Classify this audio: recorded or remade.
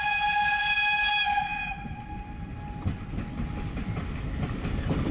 recorded